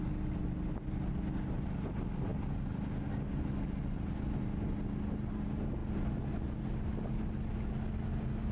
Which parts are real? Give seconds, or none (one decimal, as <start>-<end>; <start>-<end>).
0.0-8.5